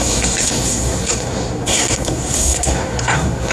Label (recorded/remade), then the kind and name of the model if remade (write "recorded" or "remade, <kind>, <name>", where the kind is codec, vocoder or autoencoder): remade, codec, SNAC